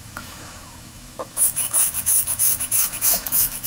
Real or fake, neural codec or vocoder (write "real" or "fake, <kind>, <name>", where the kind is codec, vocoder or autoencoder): fake, autoencoder, DAC-VAE